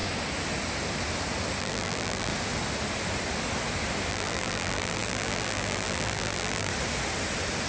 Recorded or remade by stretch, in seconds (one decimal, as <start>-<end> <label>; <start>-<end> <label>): 0.0-1.6 recorded; 1.6-2.3 remade; 2.3-4.1 recorded; 4.1-6.7 remade; 6.7-7.7 recorded